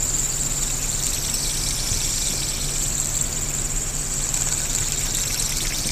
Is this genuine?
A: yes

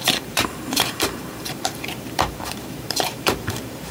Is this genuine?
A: no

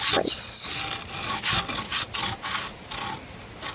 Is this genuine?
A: yes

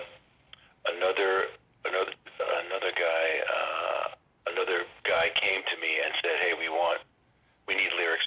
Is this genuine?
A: yes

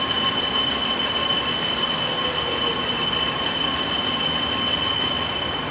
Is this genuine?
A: yes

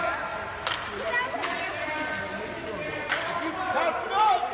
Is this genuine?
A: yes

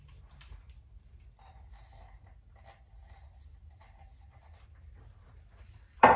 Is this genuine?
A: yes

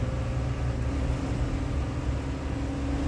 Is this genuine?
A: yes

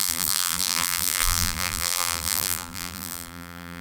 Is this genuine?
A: no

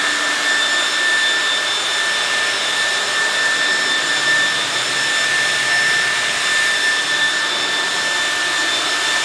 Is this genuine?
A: yes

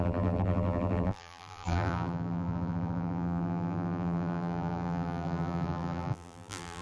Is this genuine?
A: no